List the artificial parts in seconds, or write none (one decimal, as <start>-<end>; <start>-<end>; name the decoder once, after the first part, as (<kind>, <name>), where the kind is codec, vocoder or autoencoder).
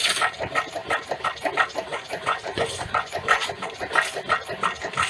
1.9-3.8 (vocoder, Vocos)